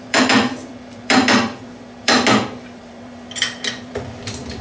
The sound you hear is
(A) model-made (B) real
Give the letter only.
A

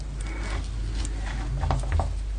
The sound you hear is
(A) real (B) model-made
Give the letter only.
A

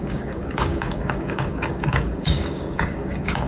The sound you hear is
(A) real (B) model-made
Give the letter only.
B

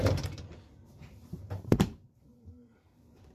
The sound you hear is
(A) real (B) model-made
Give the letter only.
B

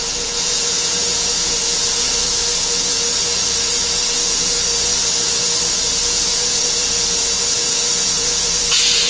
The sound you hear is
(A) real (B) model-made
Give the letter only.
B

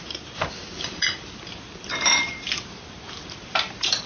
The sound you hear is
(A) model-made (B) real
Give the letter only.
A